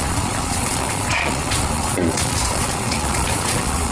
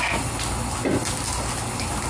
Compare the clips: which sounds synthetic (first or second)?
first